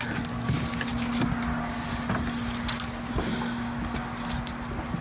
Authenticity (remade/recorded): recorded